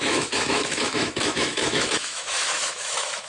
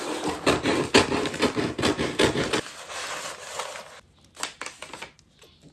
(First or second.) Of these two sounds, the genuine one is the second